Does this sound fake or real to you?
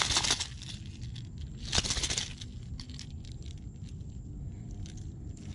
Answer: real